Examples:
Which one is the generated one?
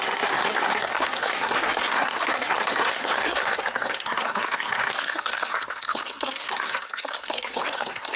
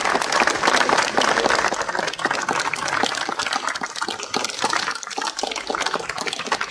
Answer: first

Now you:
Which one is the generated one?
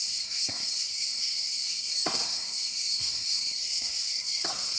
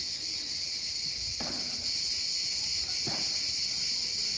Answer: first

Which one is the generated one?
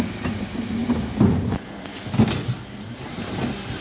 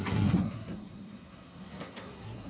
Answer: second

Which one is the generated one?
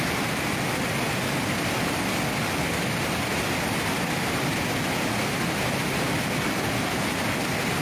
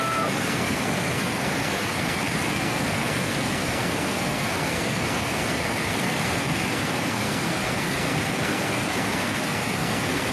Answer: second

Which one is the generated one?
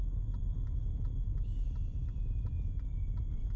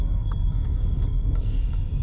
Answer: second